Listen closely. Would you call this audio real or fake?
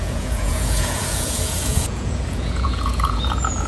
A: fake